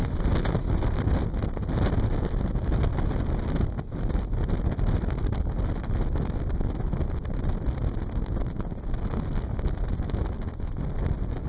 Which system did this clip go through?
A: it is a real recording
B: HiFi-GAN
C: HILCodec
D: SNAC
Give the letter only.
A